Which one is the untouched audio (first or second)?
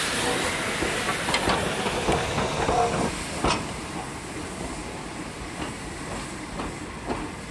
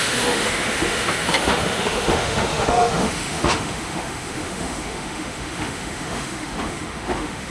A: first